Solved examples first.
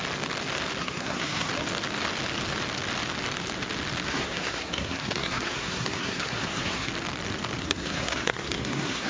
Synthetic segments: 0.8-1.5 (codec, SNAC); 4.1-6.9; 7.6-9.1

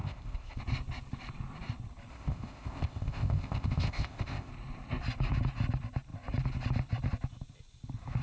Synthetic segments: 0.0-0.6 (codec, ZipCodec); 2.1-4.5

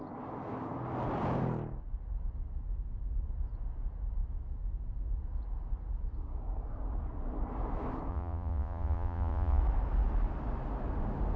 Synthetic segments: 8.1-9.6 (vocoder, Vocos)

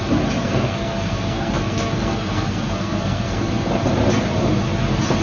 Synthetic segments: 0.4-3.5 (codec, SNAC)

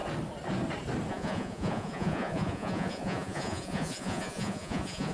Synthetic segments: 1.1-5.1 (vocoder, Vocos)

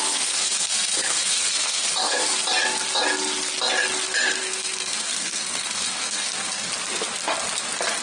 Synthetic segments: 0.0-2.4 (codec, SNAC); 4.4-6.7